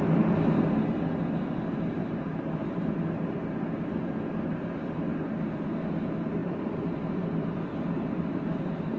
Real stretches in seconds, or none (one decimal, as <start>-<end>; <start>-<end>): 0.0-2.0; 4.2-6.4; 7.3-9.0